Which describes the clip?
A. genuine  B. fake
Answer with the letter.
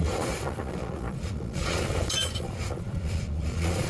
B